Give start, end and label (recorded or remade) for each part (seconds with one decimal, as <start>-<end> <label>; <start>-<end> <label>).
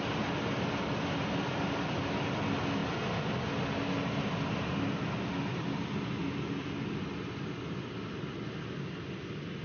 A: 0.0-9.6 recorded